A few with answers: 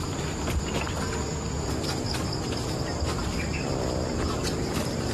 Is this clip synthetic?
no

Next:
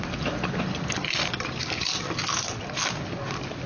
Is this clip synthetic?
no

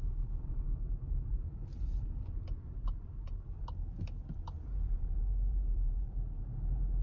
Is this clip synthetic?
yes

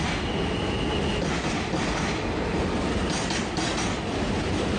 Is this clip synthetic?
no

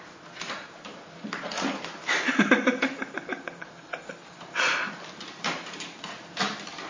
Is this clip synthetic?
yes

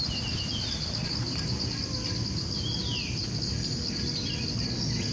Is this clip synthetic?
no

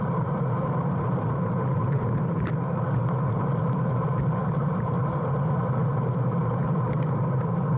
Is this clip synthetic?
yes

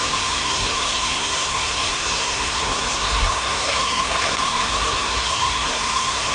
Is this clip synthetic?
yes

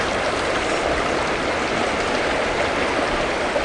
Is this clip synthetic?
no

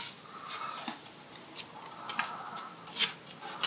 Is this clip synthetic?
no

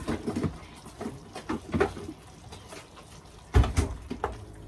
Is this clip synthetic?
no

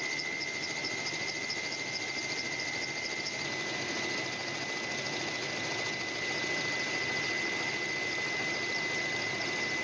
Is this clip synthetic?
no